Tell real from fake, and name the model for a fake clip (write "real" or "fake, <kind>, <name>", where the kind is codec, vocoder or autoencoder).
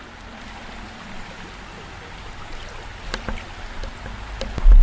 real